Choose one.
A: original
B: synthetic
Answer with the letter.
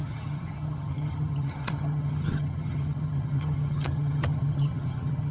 B